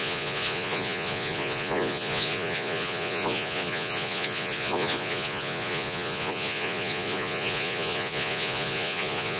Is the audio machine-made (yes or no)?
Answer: yes